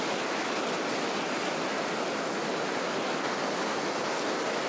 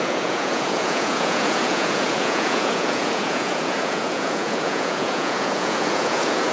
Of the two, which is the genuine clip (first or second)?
first